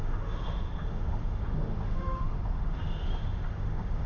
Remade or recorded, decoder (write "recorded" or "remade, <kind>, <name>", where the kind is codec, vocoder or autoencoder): remade, autoencoder, DAC-VAE